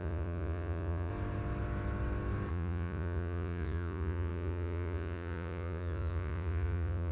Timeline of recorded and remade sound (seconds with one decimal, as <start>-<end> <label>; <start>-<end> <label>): 0.0-1.1 remade; 1.1-2.5 recorded; 2.5-7.1 remade